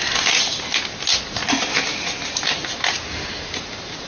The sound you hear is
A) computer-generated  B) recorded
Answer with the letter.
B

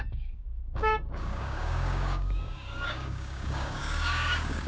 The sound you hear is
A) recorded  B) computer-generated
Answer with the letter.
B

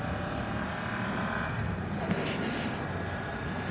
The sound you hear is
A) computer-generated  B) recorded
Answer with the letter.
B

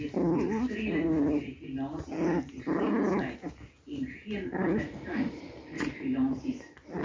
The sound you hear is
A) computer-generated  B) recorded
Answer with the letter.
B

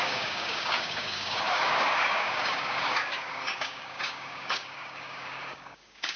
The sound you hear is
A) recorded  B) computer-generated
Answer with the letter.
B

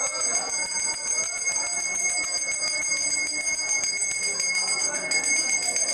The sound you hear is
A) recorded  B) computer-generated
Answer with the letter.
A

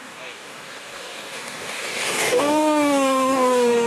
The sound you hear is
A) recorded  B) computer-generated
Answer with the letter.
B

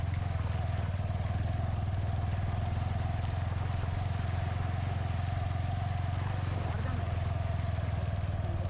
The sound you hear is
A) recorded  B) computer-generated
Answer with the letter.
A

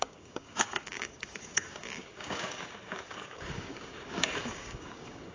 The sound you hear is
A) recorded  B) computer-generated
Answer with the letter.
B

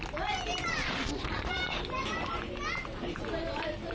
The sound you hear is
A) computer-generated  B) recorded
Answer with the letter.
B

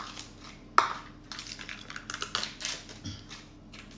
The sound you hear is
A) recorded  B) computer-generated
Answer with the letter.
A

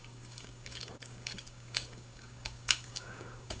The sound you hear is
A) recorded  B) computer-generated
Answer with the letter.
B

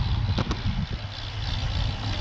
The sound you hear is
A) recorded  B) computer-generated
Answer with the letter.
A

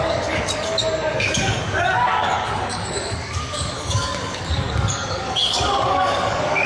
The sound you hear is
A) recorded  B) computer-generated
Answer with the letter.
B